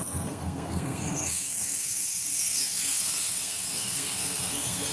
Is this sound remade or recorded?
remade